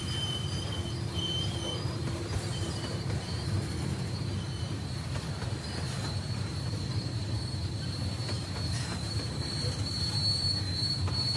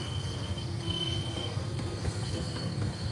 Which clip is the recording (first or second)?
first